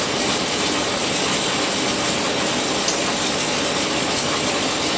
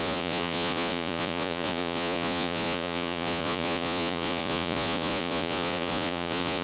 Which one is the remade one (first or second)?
second